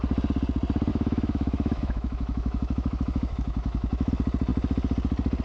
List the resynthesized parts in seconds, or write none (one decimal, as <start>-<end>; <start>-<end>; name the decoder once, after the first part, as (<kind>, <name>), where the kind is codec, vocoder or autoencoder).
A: 0.9-4.1 (autoencoder, DAC-VAE)